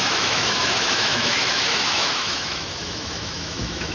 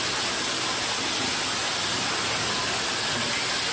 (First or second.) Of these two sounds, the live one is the second